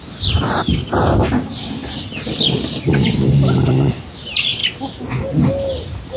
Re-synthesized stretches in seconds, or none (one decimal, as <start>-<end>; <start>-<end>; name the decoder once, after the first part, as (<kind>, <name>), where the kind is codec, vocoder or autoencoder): 0.0-0.8 (vocoder, BigVGAN v2); 1.4-1.8; 2.8-4.6